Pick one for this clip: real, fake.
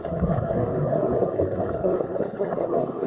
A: fake